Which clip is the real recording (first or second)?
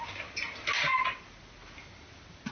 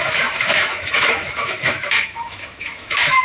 first